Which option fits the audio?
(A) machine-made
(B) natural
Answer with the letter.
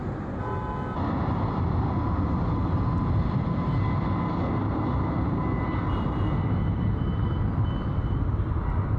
B